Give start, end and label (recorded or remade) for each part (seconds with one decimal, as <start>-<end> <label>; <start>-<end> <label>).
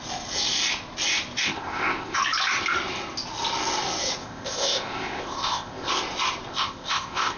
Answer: 0.0-1.4 recorded; 1.4-2.2 remade; 2.2-4.2 recorded; 4.2-5.9 remade; 5.9-6.5 recorded; 6.5-7.4 remade